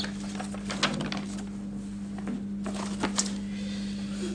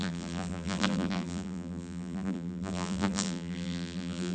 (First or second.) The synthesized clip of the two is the second